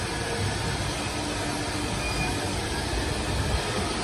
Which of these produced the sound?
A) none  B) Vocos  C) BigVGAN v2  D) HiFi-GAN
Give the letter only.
A